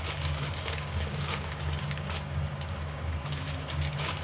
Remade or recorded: remade